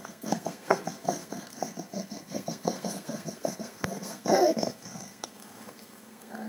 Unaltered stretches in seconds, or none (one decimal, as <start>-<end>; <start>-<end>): none